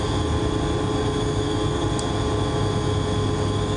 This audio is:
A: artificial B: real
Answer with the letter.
B